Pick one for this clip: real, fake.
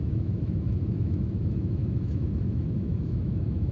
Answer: fake